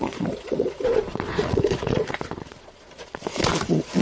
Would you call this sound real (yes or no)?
no